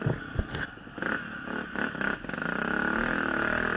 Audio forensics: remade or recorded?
recorded